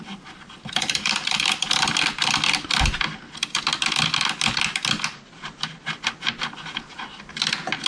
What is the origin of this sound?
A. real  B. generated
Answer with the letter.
A